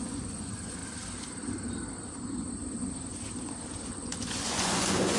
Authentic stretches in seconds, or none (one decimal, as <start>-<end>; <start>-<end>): 0.8-3.9